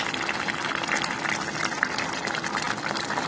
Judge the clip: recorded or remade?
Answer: recorded